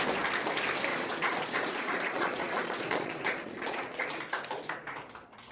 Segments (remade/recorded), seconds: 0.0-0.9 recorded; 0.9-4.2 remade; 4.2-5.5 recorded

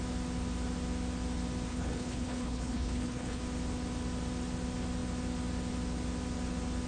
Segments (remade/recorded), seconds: 0.0-1.7 recorded; 1.7-3.4 remade; 3.4-6.9 recorded

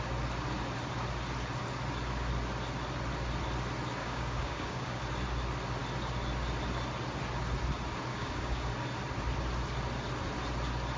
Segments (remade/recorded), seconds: 0.0-4.0 recorded; 4.0-5.0 remade; 5.0-8.1 recorded; 8.1-8.7 remade; 8.7-11.0 recorded

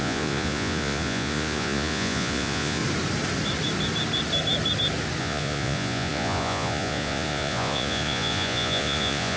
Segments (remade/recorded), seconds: 0.0-2.8 remade; 2.8-5.2 recorded; 5.2-9.4 remade

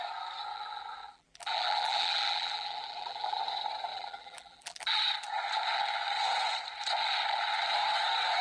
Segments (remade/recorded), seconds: 0.0-0.5 recorded; 0.5-3.4 remade; 3.4-3.9 recorded; 3.9-5.0 remade; 5.0-8.4 recorded

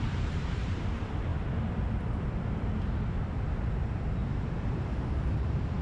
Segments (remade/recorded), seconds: 0.0-1.3 remade; 1.3-3.9 recorded; 3.9-5.8 remade